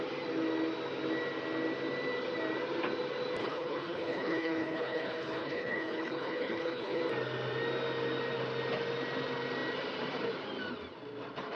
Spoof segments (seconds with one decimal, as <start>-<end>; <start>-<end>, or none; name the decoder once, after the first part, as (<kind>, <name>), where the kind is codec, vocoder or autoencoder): 3.4-7.0 (codec, HILCodec)